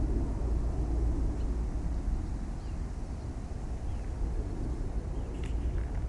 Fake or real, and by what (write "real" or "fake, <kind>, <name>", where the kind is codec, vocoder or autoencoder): real